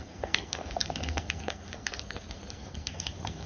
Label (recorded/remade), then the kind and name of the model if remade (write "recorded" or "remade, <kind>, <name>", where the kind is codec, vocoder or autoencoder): remade, codec, SNAC